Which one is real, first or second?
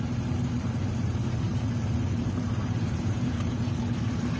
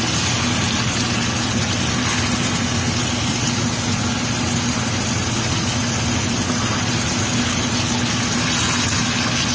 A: second